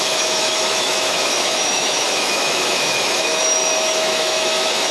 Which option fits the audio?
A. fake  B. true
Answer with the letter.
A